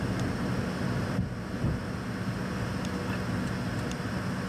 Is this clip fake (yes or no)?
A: no